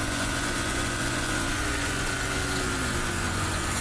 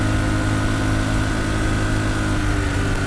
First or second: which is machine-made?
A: first